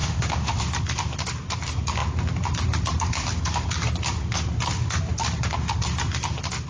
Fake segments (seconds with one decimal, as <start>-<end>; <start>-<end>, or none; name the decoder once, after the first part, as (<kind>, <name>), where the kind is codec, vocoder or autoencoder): 0.0-0.6 (autoencoder, DAC-VAE)